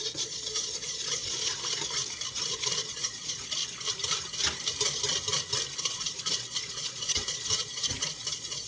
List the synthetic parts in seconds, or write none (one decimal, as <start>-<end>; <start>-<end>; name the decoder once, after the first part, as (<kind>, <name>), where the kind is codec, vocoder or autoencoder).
0.0-2.0 (vocoder, Vocos); 2.5-3.6; 5.8-8.7